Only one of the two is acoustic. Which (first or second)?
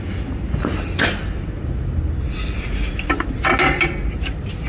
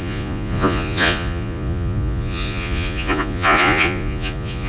first